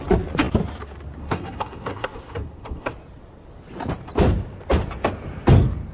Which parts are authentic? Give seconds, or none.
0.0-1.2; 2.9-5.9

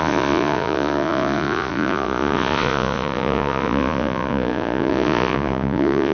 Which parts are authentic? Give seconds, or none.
none

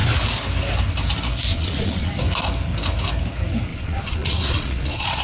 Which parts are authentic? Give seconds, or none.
0.0-1.5; 2.1-3.7

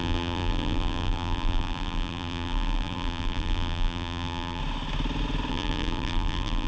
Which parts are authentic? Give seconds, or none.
4.6-5.5

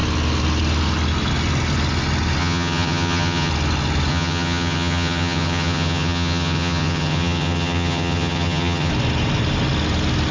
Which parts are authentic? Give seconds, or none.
0.0-2.4; 3.5-4.1; 8.9-10.3

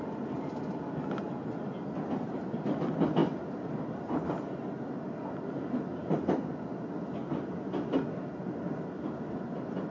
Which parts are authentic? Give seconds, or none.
0.0-9.9